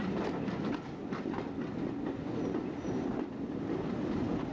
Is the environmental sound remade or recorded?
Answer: recorded